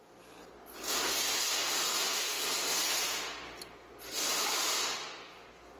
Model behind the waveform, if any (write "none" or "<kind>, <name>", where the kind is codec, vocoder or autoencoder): vocoder, BigVGAN v2